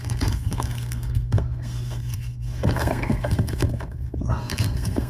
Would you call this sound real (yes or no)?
no